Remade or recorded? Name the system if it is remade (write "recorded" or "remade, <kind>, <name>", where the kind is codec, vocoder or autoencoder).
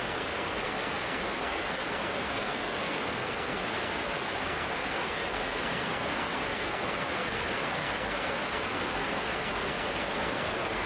remade, codec, SNAC